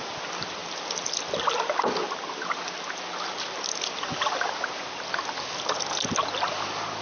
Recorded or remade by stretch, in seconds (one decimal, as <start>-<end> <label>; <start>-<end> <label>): 0.0-0.6 recorded; 0.6-1.5 remade; 1.5-7.0 recorded